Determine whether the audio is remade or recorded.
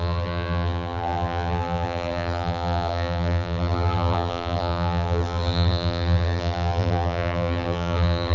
remade